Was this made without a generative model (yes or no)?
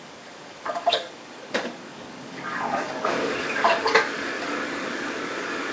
no